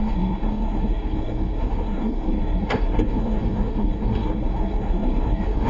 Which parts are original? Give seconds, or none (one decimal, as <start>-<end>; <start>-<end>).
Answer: none